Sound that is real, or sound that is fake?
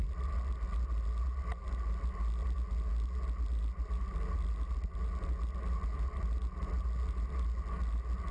real